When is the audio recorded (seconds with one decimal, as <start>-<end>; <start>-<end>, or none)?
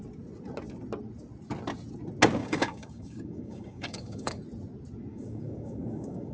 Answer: 0.0-2.4; 4.4-5.1